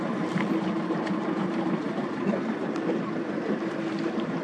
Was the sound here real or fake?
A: fake